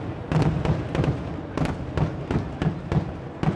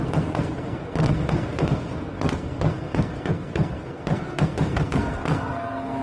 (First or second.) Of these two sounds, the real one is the first